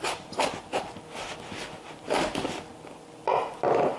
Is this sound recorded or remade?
recorded